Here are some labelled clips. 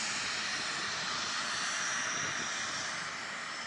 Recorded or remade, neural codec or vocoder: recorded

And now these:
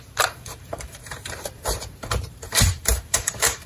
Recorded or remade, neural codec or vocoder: remade, vocoder, BigVGAN v2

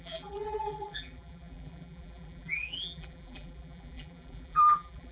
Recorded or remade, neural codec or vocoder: remade, vocoder, BigVGAN v2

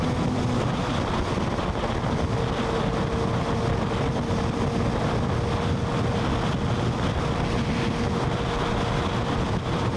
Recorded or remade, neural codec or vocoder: recorded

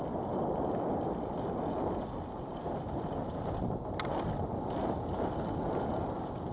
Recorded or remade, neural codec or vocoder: recorded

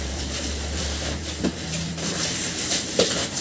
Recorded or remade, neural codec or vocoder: remade, vocoder, BigVGAN v2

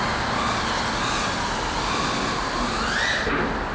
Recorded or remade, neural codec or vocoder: recorded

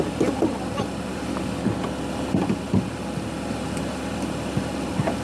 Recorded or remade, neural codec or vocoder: recorded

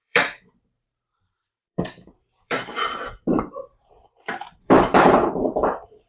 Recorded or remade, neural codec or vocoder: remade, vocoder, BigVGAN v2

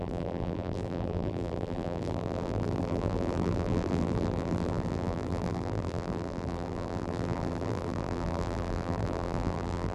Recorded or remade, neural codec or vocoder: remade, vocoder, BigVGAN v2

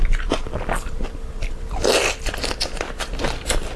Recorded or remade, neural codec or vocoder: remade, vocoder, BigVGAN v2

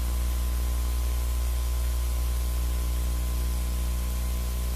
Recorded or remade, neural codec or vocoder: recorded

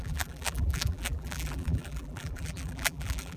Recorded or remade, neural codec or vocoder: remade, vocoder, BigVGAN v2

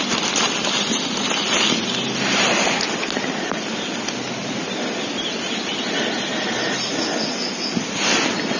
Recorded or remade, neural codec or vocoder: recorded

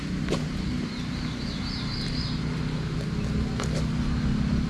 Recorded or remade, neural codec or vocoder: recorded